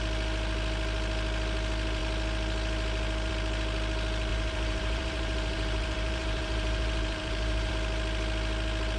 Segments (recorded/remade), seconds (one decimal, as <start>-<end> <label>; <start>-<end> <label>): 0.0-4.3 recorded; 4.3-7.7 remade; 7.7-9.0 recorded